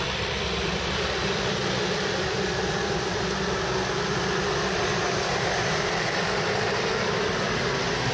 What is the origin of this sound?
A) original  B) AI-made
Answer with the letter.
B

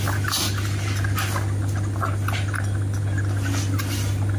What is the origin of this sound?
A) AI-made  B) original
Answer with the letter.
B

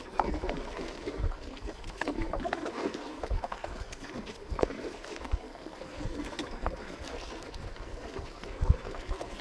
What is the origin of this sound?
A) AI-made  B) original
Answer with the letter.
A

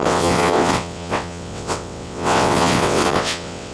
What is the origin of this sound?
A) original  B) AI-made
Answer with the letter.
B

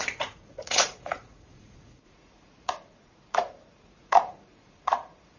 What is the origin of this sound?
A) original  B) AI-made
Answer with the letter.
B